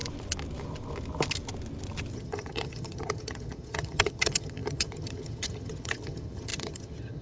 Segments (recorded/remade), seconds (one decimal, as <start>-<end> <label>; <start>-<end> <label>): 0.0-2.1 recorded; 2.1-7.2 remade